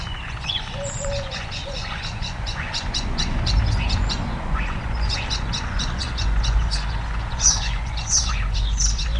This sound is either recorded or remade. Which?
remade